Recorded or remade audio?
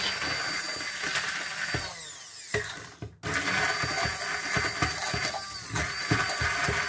recorded